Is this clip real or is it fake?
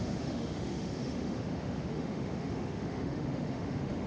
fake